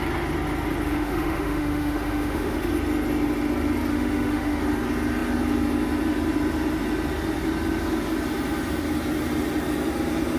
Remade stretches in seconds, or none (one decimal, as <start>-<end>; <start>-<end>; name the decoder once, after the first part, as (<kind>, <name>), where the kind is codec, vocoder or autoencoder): 0.9-2.7 (autoencoder, DAC-VAE); 3.9-4.6